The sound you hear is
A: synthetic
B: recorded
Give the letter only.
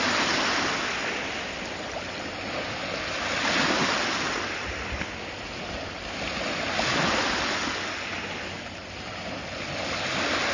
B